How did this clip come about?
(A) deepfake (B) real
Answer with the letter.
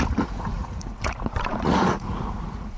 A